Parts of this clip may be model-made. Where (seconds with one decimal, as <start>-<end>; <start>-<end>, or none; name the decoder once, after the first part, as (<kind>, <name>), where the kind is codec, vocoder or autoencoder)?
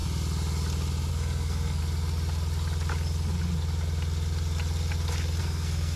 1.1-1.8 (codec, SNAC); 5.4-6.0